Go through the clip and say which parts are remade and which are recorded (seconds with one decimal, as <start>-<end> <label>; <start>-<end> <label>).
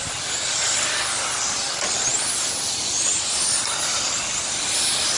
0.0-5.2 recorded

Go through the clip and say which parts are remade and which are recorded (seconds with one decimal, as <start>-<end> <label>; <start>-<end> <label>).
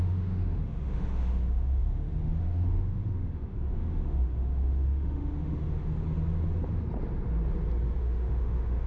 0.0-5.8 remade; 5.8-8.0 recorded; 8.0-8.9 remade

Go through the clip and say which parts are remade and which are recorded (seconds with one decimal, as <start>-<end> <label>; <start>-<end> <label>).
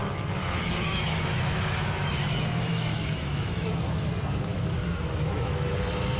0.0-3.7 remade; 3.7-4.5 recorded; 4.5-5.7 remade; 5.7-6.2 recorded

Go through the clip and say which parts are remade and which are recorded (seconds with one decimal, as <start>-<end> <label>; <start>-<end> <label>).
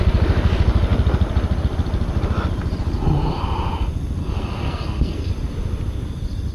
0.0-4.2 recorded; 4.2-5.3 remade; 5.3-6.5 recorded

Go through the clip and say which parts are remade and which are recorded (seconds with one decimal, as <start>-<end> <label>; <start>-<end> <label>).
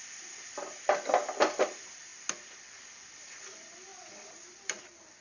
0.0-2.1 remade; 2.1-3.2 recorded; 3.2-3.9 remade; 3.9-4.5 recorded; 4.5-5.2 remade